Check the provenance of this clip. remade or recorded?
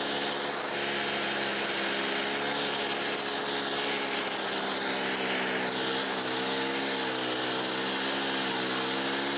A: recorded